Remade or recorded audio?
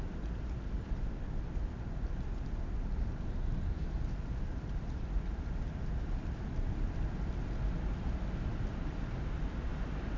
recorded